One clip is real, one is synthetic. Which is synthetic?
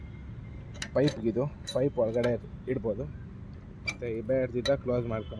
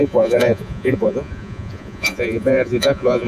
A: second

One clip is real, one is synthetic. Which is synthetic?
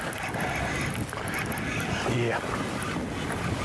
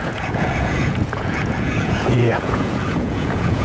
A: second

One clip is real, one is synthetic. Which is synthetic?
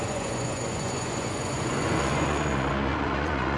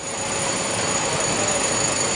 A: first